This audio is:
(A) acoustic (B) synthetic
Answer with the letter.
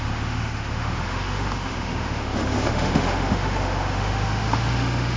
B